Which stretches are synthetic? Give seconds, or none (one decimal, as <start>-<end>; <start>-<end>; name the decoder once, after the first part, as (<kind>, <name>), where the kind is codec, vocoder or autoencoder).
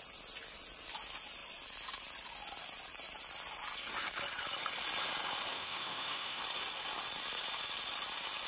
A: 5.5-6.4 (autoencoder, DAC-VAE)